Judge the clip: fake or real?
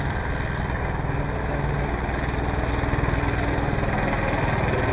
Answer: real